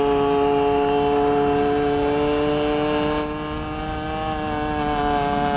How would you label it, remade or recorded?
recorded